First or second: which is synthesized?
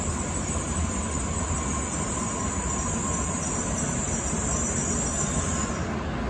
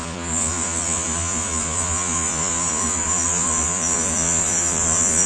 second